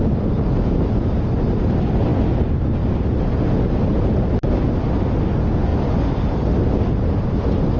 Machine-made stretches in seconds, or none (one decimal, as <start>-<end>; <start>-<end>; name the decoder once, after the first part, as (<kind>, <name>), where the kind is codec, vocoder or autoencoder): none